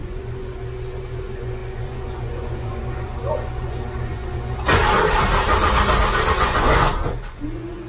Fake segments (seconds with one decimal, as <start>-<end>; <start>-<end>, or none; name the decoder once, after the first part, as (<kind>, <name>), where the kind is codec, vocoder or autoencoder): 0.0-4.8 (vocoder, Vocos); 6.3-7.9